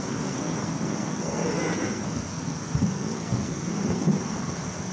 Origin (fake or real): fake